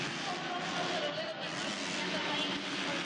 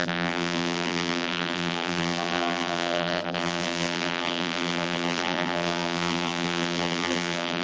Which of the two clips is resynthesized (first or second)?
second